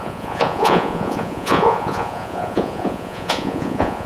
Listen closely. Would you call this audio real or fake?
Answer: fake